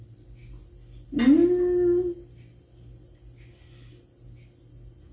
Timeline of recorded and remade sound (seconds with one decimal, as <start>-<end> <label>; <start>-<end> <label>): 0.0-5.1 recorded